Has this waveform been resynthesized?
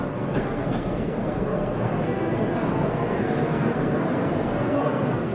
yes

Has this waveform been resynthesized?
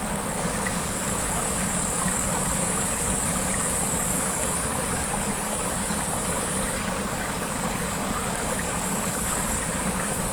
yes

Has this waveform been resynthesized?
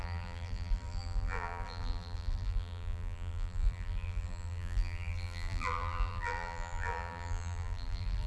yes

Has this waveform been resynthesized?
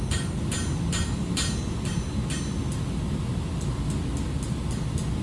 no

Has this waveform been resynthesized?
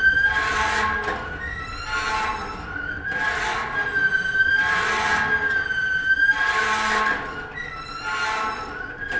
no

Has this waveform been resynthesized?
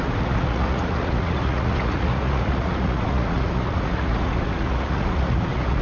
yes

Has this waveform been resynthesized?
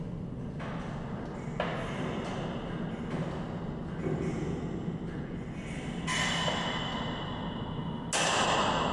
no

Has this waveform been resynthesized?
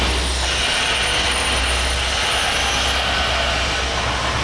no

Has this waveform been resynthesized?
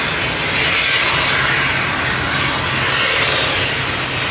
no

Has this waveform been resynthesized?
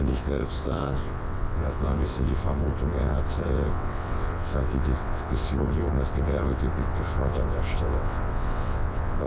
yes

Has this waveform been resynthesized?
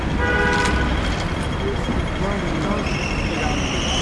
no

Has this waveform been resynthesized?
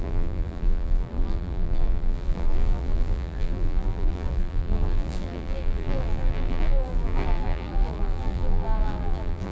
yes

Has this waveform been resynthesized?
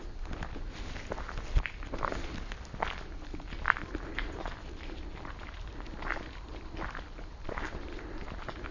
no